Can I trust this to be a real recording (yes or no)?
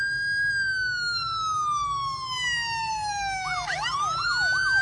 yes